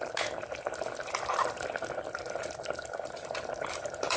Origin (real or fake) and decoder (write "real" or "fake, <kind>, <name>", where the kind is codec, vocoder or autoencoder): fake, vocoder, BigVGAN v2